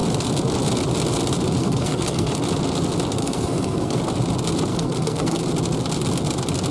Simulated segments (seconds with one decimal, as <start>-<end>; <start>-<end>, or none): 1.6-2.3; 3.2-4.0; 4.7-5.4